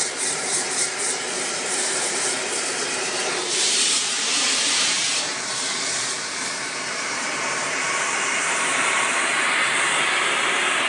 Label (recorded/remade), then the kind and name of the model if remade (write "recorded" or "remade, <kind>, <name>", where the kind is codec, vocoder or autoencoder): remade, vocoder, BigVGAN v2